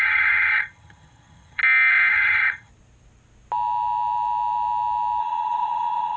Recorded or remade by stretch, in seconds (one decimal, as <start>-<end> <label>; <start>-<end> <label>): 0.0-1.6 remade; 1.6-2.1 recorded; 2.1-2.7 remade; 2.7-5.2 recorded; 5.2-6.2 remade